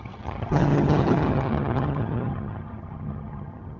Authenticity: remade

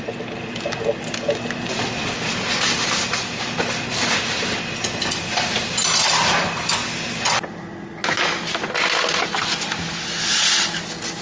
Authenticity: recorded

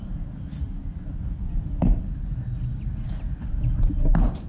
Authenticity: recorded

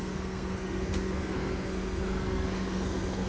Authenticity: remade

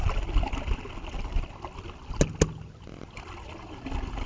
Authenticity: recorded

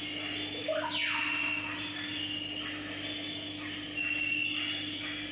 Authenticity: recorded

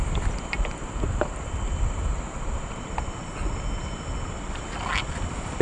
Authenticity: recorded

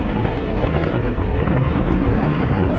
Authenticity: remade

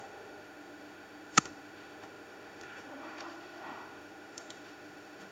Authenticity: remade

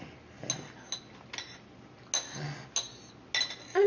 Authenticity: recorded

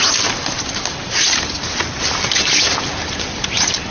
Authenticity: recorded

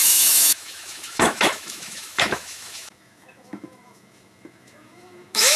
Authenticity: remade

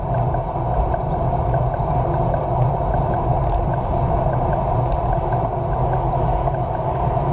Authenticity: recorded